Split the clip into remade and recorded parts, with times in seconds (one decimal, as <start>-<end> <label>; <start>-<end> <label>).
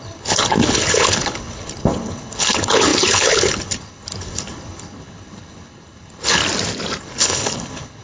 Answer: 0.0-6.4 remade; 6.4-7.0 recorded; 7.0-8.0 remade